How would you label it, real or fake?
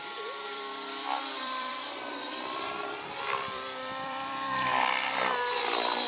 fake